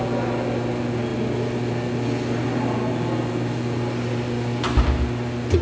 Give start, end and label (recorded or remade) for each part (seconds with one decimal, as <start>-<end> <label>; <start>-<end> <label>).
0.0-5.6 recorded